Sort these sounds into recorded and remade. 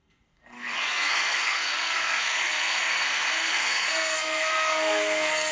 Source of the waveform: remade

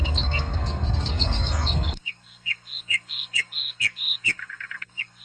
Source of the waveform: remade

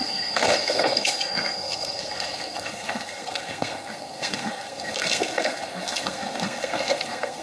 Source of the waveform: remade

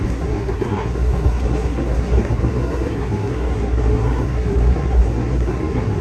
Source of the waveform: remade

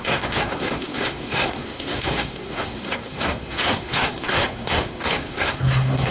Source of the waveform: remade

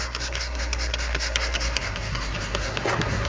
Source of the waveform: remade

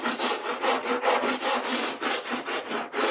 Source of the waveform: recorded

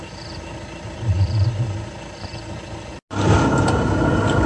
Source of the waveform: recorded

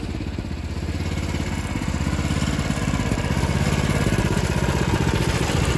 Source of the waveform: recorded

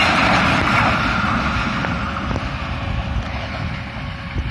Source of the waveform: recorded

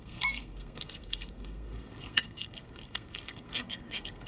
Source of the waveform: remade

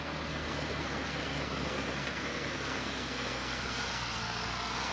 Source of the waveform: remade